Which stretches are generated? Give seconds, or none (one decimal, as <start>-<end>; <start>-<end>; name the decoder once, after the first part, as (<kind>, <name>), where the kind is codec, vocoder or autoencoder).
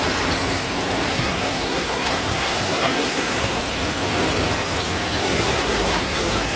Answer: 1.1-3.6 (codec, SNAC); 5.2-6.6